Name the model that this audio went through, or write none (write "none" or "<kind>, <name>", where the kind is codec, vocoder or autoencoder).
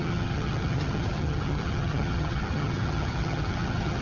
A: vocoder, HiFi-GAN